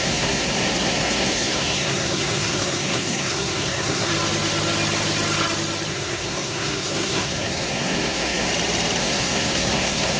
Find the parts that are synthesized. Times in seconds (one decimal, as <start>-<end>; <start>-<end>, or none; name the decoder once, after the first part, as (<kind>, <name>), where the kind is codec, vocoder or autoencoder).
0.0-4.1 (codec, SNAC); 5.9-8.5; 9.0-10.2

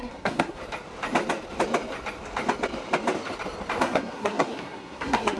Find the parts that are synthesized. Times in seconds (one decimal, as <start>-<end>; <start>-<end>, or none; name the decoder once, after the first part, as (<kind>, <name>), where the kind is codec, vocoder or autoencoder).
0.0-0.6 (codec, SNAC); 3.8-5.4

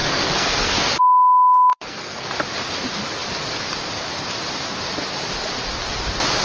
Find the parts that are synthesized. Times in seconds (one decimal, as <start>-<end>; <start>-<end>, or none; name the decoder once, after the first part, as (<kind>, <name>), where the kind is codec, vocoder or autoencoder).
0.0-1.0 (codec, SNAC); 1.7-2.2

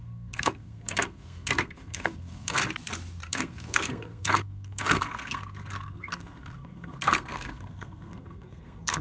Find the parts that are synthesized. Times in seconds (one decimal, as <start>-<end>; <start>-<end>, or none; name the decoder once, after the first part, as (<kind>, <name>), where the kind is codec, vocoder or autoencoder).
0.0-2.6 (codec, SNAC); 3.3-9.0